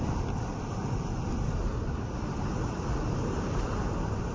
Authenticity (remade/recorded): recorded